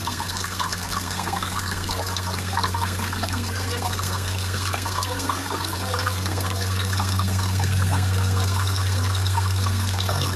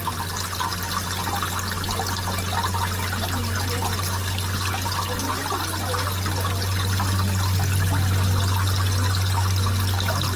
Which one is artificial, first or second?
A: first